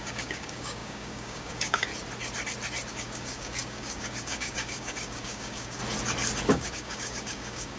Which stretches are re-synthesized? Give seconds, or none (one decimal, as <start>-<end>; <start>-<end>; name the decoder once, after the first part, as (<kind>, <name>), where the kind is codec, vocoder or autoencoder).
0.0-1.9 (codec, DAC); 2.9-5.8; 6.5-7.8